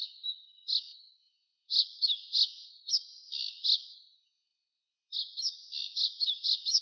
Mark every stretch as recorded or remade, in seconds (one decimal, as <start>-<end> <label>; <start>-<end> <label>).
0.0-6.8 remade

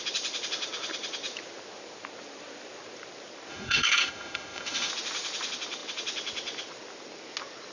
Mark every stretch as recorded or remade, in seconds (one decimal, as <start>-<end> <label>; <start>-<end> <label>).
0.0-3.5 recorded; 3.5-4.9 remade; 4.9-7.7 recorded

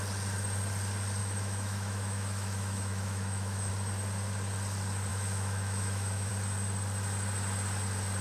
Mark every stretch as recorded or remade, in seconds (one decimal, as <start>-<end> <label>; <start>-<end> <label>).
0.0-1.2 recorded; 1.2-3.7 remade; 3.7-5.1 recorded; 5.1-6.3 remade; 6.3-8.2 recorded

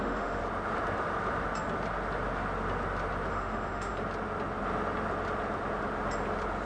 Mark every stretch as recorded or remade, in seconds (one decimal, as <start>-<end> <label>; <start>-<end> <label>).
0.0-0.4 remade; 0.4-3.3 recorded; 3.3-3.9 remade; 3.9-6.7 recorded

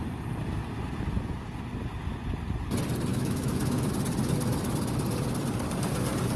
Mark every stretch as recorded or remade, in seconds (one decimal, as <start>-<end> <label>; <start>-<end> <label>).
0.0-3.1 recorded; 3.1-3.9 remade; 3.9-6.4 recorded

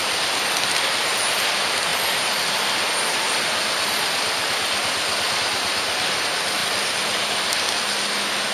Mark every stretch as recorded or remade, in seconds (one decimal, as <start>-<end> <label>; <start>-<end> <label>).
0.0-8.5 recorded